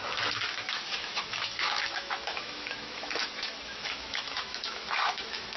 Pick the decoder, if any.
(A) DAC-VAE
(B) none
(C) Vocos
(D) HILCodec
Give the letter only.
A